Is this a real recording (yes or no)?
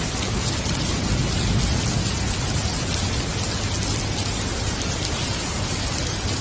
yes